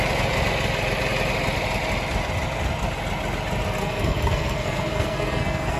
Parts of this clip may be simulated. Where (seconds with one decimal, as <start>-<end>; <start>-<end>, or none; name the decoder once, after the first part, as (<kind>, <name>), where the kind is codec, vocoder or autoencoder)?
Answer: 3.8-5.8 (codec, SNAC)